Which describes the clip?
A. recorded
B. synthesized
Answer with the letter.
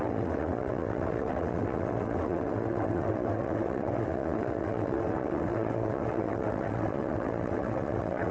B